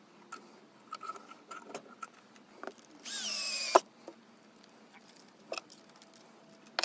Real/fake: real